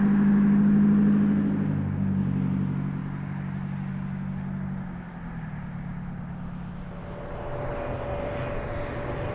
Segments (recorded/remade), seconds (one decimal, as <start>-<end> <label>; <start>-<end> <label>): 0.0-9.3 recorded